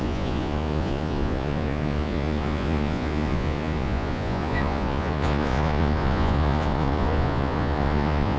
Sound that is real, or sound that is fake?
fake